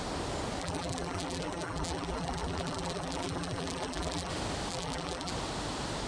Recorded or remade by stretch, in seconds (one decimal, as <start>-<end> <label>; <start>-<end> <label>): 0.0-0.6 recorded; 0.6-4.3 remade; 4.3-4.7 recorded; 4.7-5.3 remade; 5.3-6.1 recorded